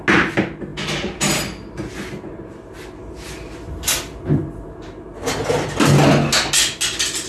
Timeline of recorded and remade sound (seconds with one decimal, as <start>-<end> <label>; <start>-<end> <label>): 0.0-7.3 recorded

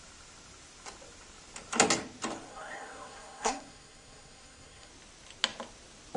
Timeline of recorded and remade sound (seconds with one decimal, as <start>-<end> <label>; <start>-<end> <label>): 0.0-2.5 recorded; 2.5-4.9 remade; 4.9-6.2 recorded

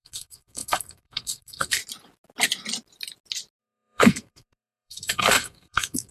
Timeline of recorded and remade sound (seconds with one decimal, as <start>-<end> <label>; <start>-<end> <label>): 0.0-1.8 remade; 1.8-3.6 recorded; 3.6-6.1 remade

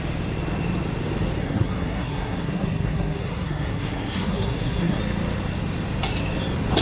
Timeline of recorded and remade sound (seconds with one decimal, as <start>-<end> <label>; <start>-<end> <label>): 0.0-1.4 recorded; 1.4-5.0 remade; 5.0-6.8 recorded

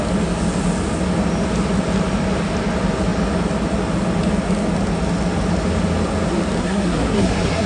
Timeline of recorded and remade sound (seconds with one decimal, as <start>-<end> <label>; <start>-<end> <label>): 0.0-6.6 recorded; 6.6-7.7 remade

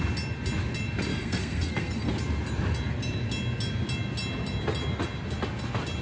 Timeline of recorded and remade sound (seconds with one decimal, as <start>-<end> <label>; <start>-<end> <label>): 0.0-1.1 recorded; 1.1-2.1 remade; 2.1-6.0 recorded